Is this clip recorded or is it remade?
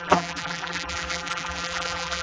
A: remade